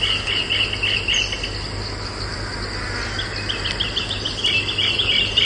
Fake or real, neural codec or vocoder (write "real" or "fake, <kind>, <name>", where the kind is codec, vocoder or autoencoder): real